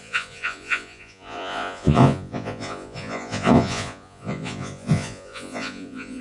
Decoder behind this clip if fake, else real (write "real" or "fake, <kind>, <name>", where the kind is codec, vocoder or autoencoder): fake, vocoder, Vocos